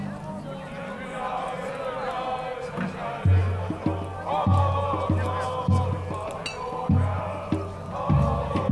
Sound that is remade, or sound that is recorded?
recorded